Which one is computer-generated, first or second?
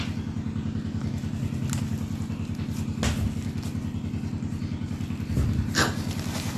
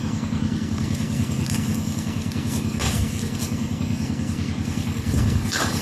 second